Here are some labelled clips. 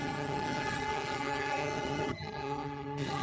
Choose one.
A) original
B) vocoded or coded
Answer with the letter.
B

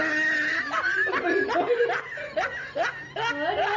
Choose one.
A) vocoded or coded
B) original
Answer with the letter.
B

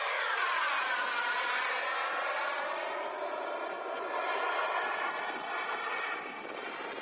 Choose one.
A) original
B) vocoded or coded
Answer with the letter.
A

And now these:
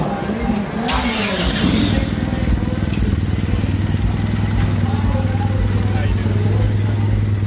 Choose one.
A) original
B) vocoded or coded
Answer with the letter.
A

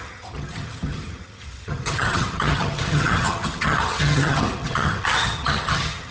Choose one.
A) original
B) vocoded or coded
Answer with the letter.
B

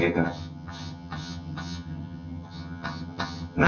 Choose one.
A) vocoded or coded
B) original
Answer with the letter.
A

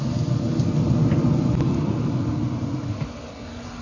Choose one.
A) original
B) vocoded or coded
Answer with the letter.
A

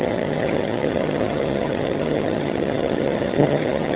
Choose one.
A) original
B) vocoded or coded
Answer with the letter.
B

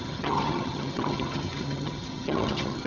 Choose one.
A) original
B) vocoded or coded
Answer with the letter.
B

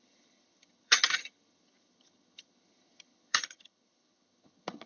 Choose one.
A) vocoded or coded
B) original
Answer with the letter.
A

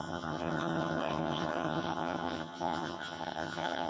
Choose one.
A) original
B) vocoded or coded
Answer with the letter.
B